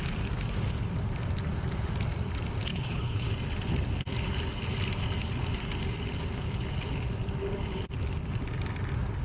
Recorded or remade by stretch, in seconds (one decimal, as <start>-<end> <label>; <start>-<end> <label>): 0.0-2.7 recorded; 2.7-3.3 remade; 3.3-9.2 recorded